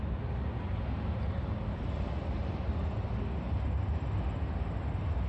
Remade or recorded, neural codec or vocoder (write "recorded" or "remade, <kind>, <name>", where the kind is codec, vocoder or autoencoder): recorded